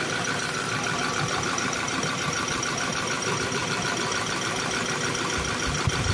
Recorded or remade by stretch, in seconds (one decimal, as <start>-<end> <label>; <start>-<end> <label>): 0.0-3.6 remade; 3.6-5.1 recorded; 5.1-6.1 remade